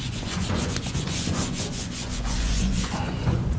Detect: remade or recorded remade